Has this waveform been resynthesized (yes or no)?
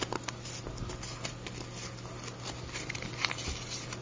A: no